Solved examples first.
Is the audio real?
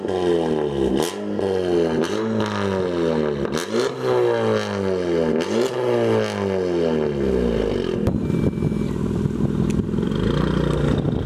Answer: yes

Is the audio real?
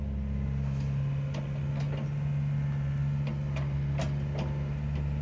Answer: yes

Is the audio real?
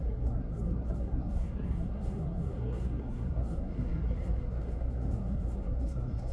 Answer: no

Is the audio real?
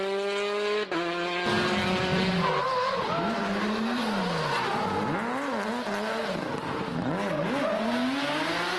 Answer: yes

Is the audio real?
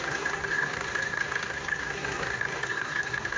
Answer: no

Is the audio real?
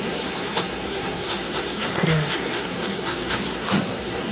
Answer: no